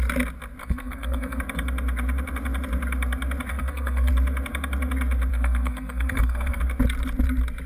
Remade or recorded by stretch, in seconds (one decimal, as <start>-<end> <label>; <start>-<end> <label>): 0.0-0.6 recorded; 0.6-1.4 remade; 1.4-3.5 recorded; 3.5-4.1 remade; 4.1-5.3 recorded; 5.3-6.6 remade; 6.6-7.7 recorded